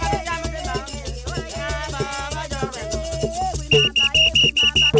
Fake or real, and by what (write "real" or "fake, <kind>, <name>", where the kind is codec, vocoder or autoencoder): real